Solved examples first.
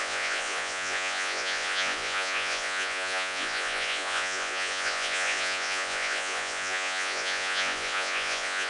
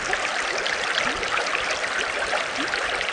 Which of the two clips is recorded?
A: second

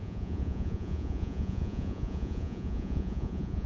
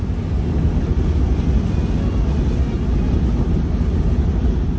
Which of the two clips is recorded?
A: second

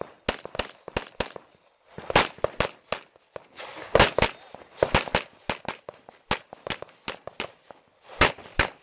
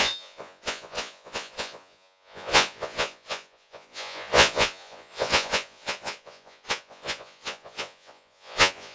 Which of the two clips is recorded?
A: first